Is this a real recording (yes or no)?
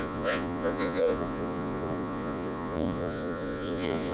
no